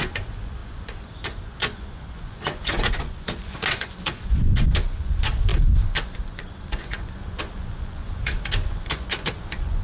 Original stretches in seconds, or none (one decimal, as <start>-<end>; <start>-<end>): none